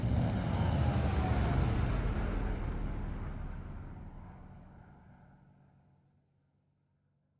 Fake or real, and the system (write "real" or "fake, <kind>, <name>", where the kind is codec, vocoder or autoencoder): real